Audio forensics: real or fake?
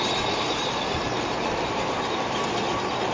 real